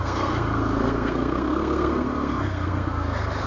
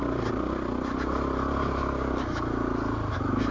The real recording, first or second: second